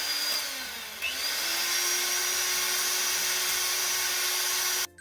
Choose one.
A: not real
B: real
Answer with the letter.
B